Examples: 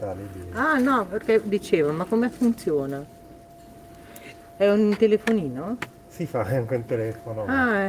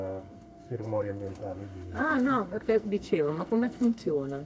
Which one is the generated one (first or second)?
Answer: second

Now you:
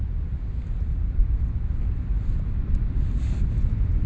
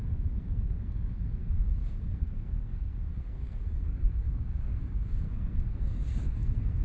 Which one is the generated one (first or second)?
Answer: second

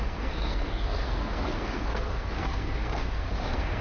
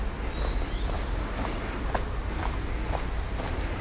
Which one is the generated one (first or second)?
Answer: first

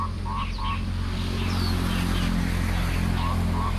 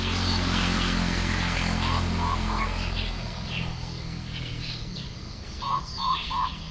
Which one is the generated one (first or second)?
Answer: second